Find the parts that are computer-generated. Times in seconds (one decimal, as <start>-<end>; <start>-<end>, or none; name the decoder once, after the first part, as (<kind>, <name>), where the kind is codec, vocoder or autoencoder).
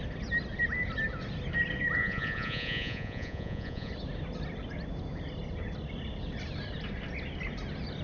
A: 2.0-3.9 (vocoder, Vocos)